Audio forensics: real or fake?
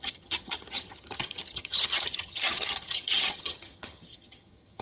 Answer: fake